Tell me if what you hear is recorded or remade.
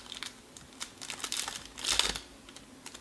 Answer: recorded